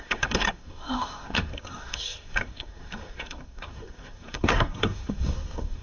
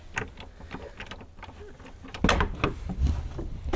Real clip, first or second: second